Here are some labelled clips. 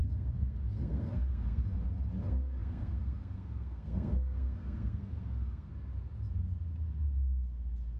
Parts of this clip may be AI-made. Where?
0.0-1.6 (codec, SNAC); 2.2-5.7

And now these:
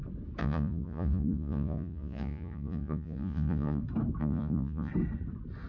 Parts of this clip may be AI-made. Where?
0.4-3.8 (vocoder, Vocos); 4.2-4.9

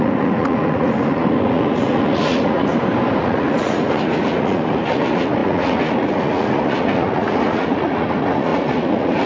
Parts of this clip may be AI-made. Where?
0.0-2.7 (vocoder, Vocos); 3.2-9.3

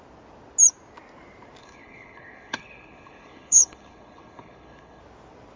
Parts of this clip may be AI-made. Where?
1.6-5.0 (codec, HILCodec)

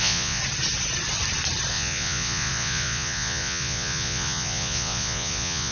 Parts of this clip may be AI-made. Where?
0.0-0.4 (vocoder, Vocos); 1.7-5.7

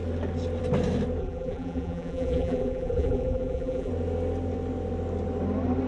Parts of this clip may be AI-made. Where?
1.2-3.9 (vocoder, BigVGAN v2)

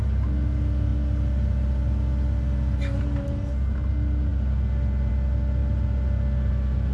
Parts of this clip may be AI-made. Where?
none

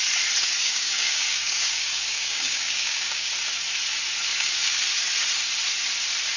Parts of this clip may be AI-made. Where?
0.6-3.3 (codec, DAC); 4.3-4.8